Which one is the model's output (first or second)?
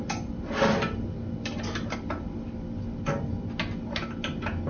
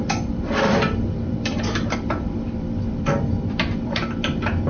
second